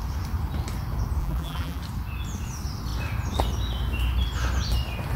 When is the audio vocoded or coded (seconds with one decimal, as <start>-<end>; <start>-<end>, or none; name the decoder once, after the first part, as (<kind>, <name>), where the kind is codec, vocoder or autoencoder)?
1.2-1.8 (vocoder, BigVGAN v2)